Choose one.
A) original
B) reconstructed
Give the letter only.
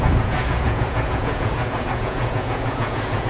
B